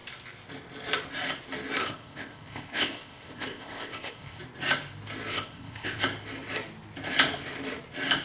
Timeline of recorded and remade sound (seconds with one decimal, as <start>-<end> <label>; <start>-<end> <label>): 0.0-1.8 recorded; 1.8-4.4 remade; 4.4-5.3 recorded; 5.3-6.0 remade; 6.0-8.2 recorded